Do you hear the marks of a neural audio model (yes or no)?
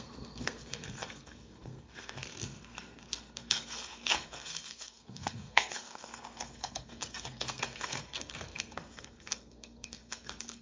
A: yes